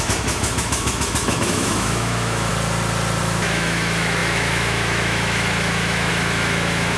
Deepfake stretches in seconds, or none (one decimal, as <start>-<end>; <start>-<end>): 0.0-2.5; 3.2-7.0